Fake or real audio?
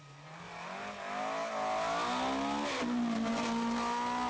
real